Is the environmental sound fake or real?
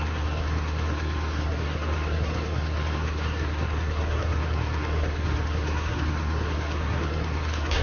fake